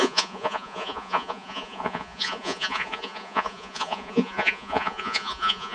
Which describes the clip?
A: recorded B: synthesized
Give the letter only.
B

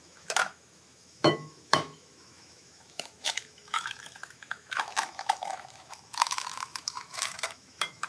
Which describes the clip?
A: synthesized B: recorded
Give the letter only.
A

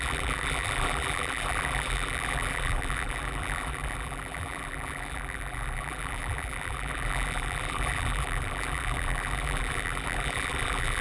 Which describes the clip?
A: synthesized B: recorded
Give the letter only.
A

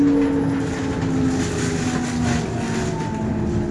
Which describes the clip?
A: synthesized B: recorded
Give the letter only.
B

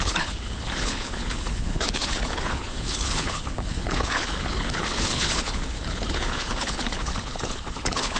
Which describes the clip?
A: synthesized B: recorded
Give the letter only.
A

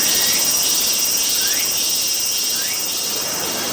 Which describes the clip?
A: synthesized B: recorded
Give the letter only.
B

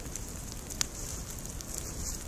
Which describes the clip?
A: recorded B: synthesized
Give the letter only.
A